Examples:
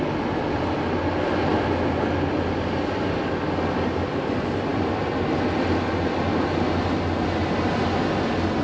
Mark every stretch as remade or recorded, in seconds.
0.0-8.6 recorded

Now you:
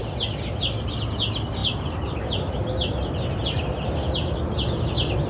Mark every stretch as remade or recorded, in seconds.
0.0-5.3 recorded

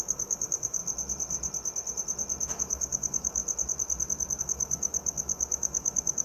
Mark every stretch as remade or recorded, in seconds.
0.0-0.8 remade; 0.8-2.5 recorded; 2.5-3.4 remade; 3.4-4.4 recorded; 4.4-6.2 remade

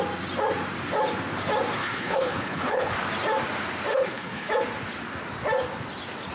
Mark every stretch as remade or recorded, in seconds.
0.0-1.8 recorded; 1.8-2.9 remade; 2.9-3.9 recorded; 3.9-4.5 remade; 4.5-6.3 recorded

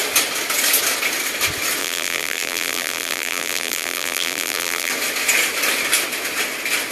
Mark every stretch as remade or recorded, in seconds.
0.0-1.8 recorded; 1.8-4.9 remade; 4.9-6.9 recorded

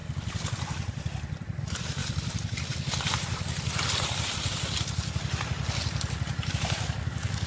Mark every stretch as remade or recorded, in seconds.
0.0-1.6 recorded; 1.6-2.0 remade; 2.0-6.5 recorded; 6.5-7.5 remade

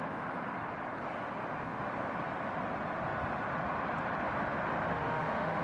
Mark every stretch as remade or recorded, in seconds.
0.0-4.9 recorded; 4.9-5.6 remade

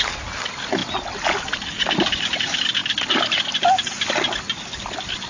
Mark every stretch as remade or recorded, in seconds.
0.0-5.3 recorded